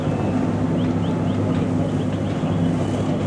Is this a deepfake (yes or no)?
no